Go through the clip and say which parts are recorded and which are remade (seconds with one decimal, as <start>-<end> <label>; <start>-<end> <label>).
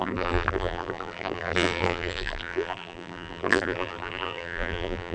0.0-5.1 remade